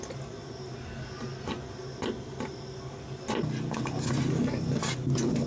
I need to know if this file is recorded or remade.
recorded